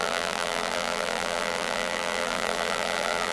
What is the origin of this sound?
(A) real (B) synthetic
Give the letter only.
B